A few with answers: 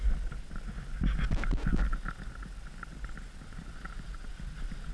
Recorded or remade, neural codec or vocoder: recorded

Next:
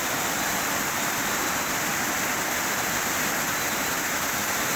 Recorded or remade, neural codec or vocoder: recorded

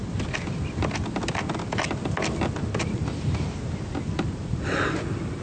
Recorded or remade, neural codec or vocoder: recorded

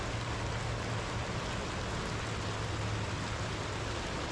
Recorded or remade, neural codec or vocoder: recorded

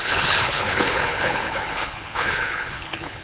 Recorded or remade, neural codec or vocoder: remade, codec, HILCodec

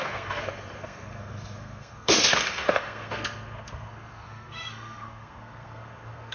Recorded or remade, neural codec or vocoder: remade, codec, SNAC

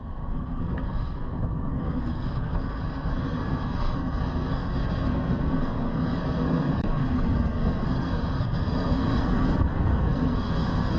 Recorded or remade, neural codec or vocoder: remade, codec, SNAC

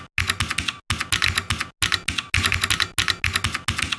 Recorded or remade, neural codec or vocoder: recorded